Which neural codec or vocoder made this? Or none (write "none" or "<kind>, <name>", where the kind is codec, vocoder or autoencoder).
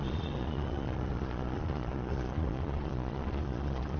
vocoder, Vocos